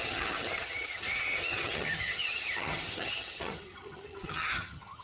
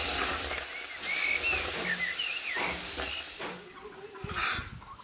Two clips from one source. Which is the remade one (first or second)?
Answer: first